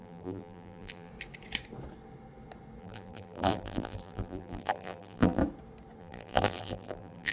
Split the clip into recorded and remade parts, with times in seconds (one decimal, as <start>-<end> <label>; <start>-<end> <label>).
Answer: 0.0-1.1 remade; 1.1-2.8 recorded; 2.8-5.4 remade; 5.4-6.0 recorded; 6.0-7.3 remade